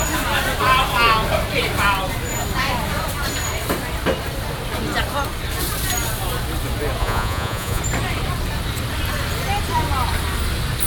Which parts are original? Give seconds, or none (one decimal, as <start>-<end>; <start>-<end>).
0.0-7.0; 7.8-10.9